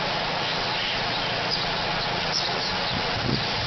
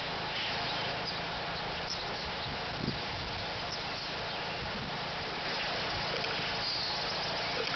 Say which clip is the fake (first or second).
first